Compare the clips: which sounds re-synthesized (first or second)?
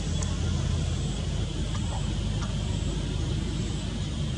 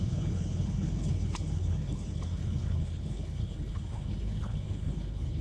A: second